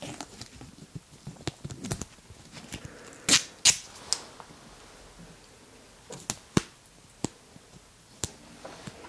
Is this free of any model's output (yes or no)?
yes